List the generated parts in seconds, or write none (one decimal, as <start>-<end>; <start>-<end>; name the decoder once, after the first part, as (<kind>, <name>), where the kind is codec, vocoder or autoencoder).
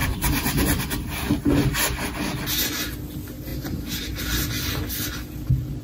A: 0.0-1.2 (vocoder, BigVGAN v2); 3.5-4.2